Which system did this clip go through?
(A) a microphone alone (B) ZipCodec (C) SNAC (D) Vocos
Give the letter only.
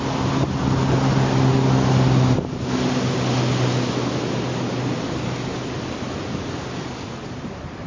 A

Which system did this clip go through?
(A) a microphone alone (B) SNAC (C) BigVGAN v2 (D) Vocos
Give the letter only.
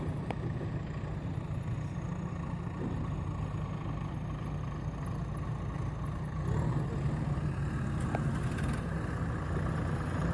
A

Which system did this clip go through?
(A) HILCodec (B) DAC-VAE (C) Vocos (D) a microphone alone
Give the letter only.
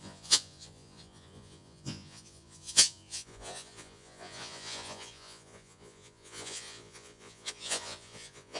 C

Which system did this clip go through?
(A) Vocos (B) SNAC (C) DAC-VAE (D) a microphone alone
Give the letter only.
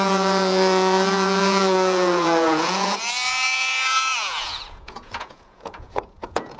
A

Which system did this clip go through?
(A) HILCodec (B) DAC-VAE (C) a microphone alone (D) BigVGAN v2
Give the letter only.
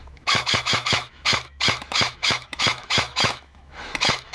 B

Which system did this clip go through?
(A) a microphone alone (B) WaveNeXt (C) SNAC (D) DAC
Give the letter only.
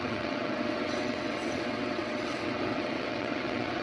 B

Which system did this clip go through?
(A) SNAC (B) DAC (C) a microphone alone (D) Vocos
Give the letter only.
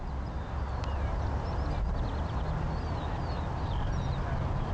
C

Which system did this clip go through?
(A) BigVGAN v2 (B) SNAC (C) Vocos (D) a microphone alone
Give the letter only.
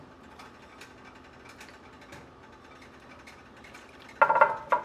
D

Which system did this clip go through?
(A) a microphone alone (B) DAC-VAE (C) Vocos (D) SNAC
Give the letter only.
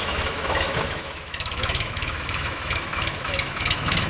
B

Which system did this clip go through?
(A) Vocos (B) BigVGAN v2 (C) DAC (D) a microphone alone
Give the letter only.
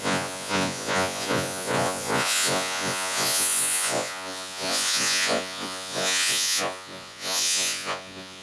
A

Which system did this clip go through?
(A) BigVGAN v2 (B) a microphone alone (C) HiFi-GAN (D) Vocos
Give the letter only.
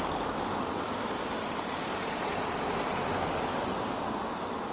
B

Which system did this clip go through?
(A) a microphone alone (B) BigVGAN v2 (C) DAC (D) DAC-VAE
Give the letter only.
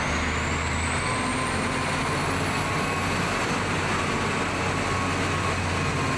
A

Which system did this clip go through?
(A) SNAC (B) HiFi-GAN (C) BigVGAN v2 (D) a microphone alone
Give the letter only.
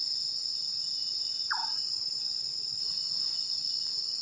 D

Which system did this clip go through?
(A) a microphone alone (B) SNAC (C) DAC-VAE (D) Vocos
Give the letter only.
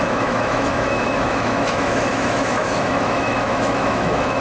C